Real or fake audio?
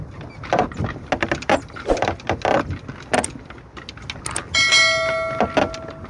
real